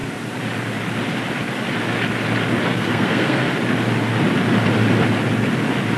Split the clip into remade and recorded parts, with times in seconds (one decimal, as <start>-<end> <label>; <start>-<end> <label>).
0.0-2.7 recorded; 2.7-3.5 remade; 3.5-6.0 recorded